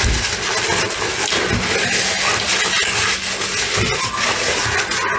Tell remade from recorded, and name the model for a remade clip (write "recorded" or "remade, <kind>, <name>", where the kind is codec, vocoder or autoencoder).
recorded